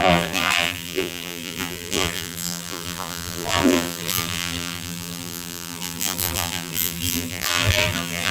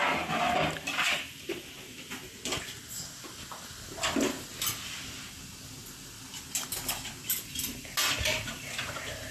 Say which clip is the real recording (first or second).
second